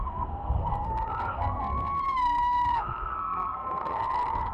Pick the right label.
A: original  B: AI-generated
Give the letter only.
B